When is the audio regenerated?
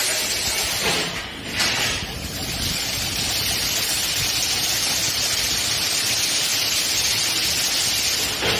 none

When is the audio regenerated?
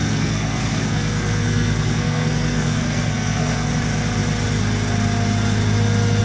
0.0-3.7 (codec, SNAC)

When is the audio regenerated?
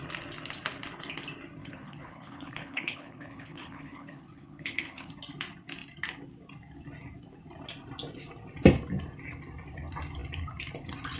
1.6-5.1 (codec, HILCodec)